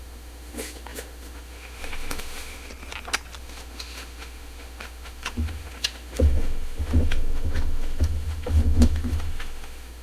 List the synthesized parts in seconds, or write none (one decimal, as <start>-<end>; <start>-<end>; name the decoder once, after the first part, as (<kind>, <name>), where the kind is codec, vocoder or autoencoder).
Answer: 0.0-2.7 (autoencoder, DAC-VAE); 3.4-10.0